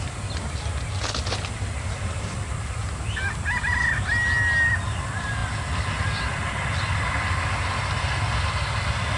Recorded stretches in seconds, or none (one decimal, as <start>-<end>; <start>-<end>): 0.0-9.2